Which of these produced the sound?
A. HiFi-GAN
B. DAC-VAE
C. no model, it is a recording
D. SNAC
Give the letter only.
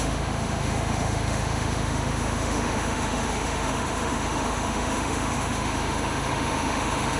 B